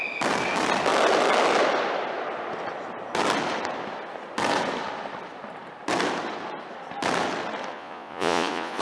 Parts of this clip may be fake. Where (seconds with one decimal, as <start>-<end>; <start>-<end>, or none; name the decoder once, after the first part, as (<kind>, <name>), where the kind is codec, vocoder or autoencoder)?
7.7-8.8 (vocoder, Vocos)